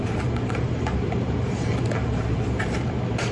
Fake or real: fake